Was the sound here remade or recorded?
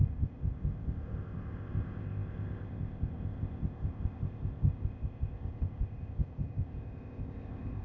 remade